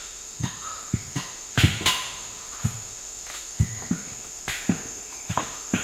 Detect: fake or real fake